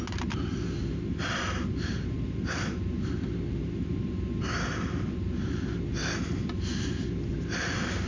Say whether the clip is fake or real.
real